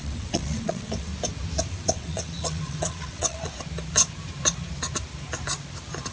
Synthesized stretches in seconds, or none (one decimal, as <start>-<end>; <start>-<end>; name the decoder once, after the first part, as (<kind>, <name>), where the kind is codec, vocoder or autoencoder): 0.0-1.1 (vocoder, WaveNeXt); 1.7-3.5